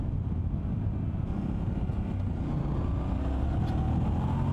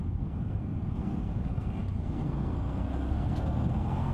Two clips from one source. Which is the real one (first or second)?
first